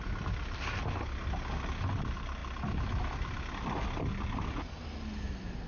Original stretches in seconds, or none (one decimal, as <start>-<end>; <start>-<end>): 0.0-5.7